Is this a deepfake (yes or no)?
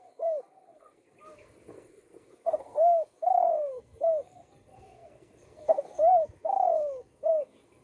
yes